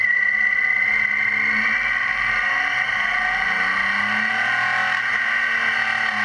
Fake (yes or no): no